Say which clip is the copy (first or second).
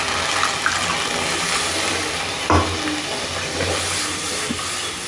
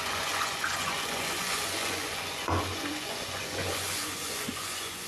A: second